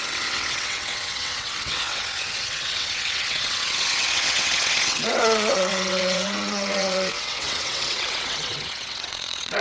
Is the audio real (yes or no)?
no